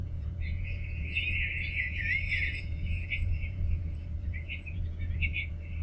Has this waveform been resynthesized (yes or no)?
yes